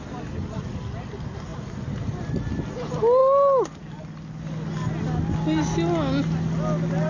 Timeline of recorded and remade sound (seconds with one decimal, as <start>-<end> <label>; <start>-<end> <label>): 0.0-7.1 recorded